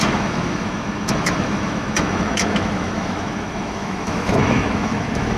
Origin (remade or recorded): remade